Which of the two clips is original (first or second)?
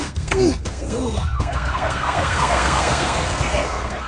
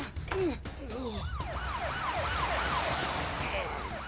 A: second